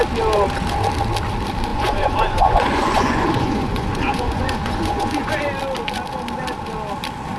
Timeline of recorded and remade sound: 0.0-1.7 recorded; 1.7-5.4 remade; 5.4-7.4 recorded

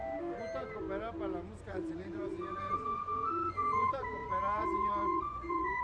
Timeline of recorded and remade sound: 0.0-1.6 recorded; 1.6-5.8 remade

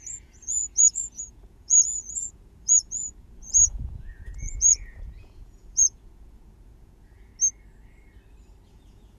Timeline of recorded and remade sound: 0.0-7.3 remade; 7.3-8.7 recorded; 8.7-9.2 remade